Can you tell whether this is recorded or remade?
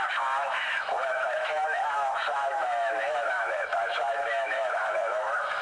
remade